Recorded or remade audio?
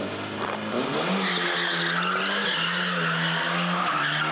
recorded